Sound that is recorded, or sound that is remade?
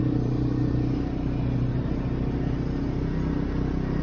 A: recorded